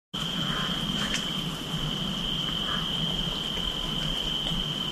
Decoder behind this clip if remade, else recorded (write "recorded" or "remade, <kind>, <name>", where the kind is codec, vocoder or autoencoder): recorded